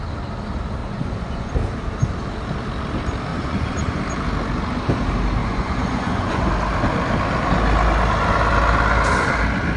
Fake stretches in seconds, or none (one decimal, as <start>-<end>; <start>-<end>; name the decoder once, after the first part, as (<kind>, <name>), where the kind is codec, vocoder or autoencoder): 0.8-1.5 (vocoder, Vocos); 3.3-4.0; 5.4-6.5